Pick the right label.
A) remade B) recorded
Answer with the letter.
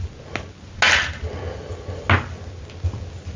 B